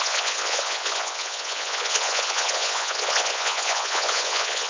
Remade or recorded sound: remade